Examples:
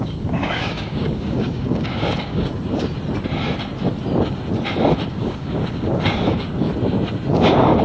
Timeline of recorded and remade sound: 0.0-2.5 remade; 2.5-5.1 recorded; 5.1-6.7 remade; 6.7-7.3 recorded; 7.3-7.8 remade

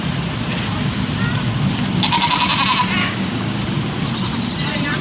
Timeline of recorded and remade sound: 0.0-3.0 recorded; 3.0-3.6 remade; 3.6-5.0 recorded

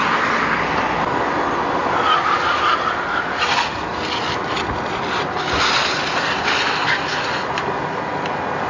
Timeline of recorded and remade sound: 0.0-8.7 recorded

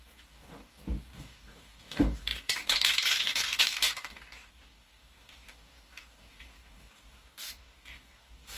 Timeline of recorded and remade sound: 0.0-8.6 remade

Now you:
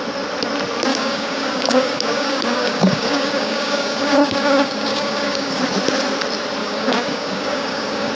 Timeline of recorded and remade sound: 0.0-0.9 recorded; 0.9-5.6 remade; 5.6-6.6 recorded; 6.6-8.1 remade

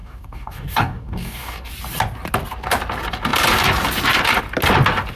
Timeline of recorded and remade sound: 0.0-1.7 remade; 1.7-5.2 recorded

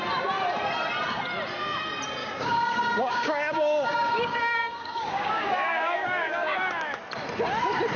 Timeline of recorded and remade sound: 0.0-2.2 recorded; 2.2-7.0 remade; 7.0-8.0 recorded

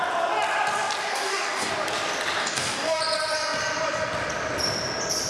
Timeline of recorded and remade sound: 0.0-1.1 recorded; 1.1-1.7 remade; 1.7-2.4 recorded; 2.4-3.0 remade; 3.0-5.3 recorded